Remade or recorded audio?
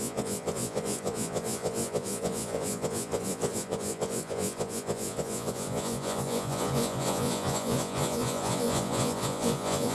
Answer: remade